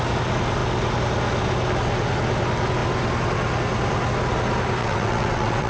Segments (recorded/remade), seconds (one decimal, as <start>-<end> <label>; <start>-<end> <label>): 0.0-4.8 recorded; 4.8-5.7 remade